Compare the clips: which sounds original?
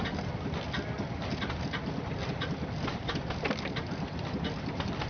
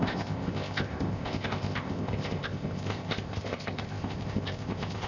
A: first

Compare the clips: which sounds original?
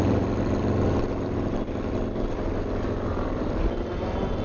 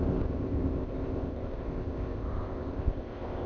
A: first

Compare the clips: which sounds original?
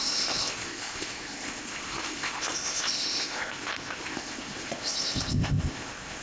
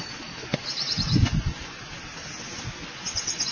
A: second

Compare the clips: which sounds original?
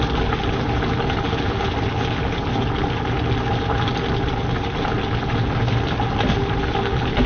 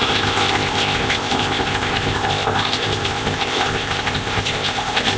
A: first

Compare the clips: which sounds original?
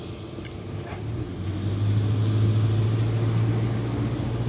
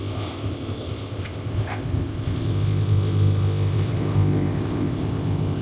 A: first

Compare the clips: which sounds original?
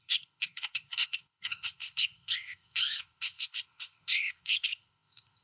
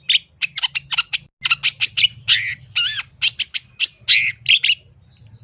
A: second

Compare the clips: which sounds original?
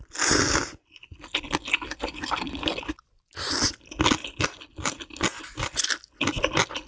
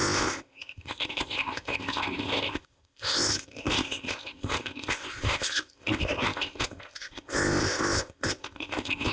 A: first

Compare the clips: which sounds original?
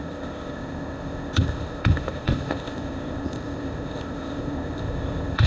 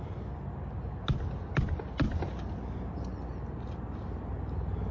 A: second